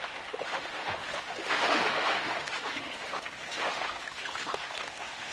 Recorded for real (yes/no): no